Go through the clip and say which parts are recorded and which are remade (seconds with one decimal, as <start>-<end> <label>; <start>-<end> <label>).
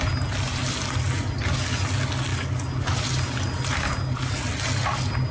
0.0-5.3 recorded